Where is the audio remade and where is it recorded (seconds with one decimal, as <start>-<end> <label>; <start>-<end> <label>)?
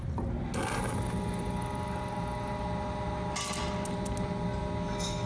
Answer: 0.0-5.3 recorded